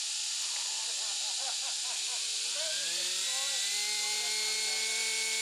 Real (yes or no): yes